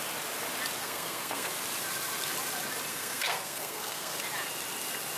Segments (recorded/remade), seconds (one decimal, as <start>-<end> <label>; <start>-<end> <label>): 0.0-0.8 recorded; 0.8-1.5 remade; 1.5-2.9 recorded; 2.9-4.2 remade; 4.2-5.2 recorded